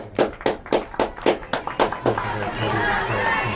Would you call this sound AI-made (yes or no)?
no